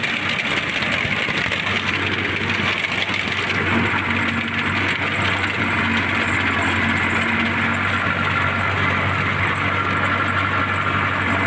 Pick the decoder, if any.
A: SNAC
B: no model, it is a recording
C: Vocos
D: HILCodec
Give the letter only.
B